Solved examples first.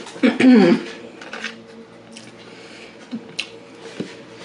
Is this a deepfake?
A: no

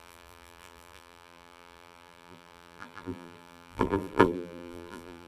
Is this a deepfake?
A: yes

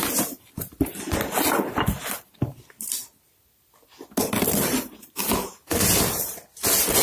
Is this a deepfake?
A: no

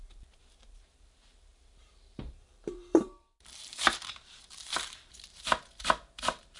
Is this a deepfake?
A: yes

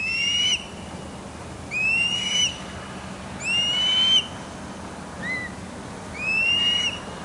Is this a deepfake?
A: no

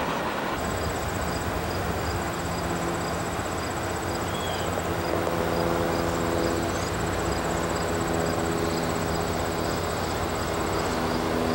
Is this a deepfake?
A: no